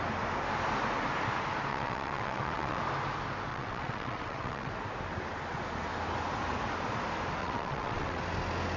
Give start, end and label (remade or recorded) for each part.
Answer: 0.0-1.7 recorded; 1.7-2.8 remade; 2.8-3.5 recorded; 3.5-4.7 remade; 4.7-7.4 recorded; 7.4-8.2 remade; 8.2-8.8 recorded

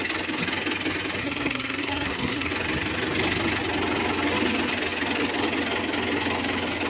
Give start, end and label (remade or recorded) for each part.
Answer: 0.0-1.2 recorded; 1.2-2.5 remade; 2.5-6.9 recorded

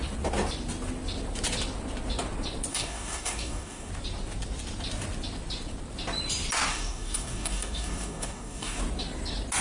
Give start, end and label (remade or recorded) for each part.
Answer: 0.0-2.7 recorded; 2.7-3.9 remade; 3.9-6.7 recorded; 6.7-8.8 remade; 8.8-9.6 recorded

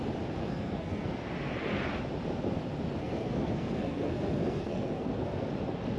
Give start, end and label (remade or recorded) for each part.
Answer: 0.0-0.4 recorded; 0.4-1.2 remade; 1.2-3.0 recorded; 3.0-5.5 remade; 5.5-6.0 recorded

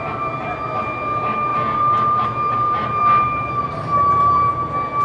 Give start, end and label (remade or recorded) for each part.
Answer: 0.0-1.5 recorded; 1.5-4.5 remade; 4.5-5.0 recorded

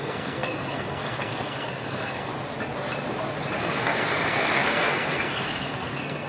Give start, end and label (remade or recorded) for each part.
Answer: 0.0-2.3 remade; 2.3-3.6 recorded; 3.6-6.3 remade